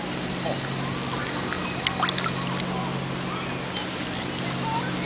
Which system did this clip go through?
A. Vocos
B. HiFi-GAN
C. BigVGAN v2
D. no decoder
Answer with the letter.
D